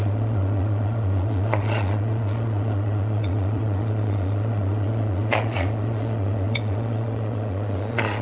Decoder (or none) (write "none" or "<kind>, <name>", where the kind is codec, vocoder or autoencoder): vocoder, Vocos